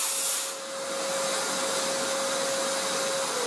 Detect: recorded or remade recorded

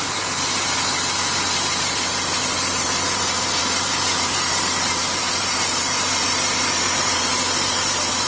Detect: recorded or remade remade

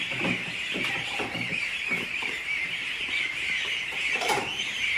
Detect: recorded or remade remade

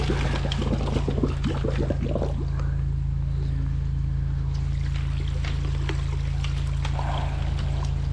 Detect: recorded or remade recorded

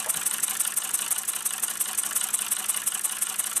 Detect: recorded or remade recorded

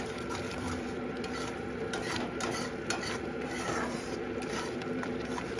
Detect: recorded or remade remade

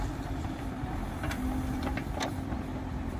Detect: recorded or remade remade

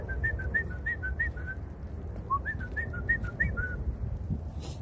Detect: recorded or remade recorded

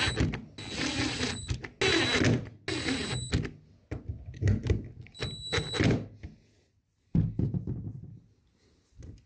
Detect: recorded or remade recorded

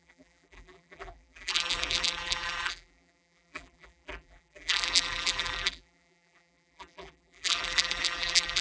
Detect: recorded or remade remade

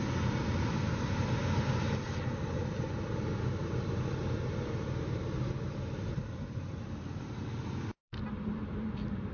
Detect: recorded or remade remade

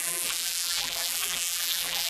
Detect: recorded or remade remade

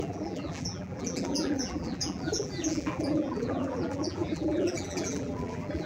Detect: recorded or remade remade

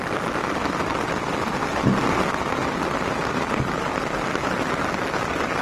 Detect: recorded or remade recorded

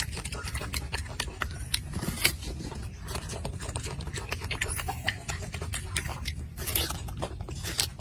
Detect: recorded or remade recorded